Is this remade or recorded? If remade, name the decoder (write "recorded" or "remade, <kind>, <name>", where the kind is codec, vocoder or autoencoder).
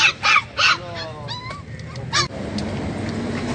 recorded